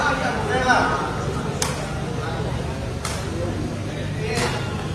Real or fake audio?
real